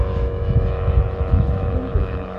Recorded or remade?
remade